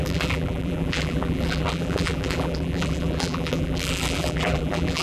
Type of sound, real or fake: fake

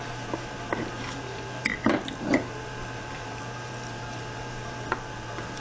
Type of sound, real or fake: fake